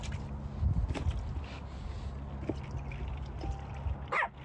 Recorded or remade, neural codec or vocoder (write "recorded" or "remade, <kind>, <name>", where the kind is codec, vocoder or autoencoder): recorded